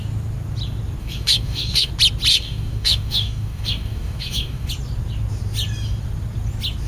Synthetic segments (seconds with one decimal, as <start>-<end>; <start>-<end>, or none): 1.0-1.9; 2.3-4.7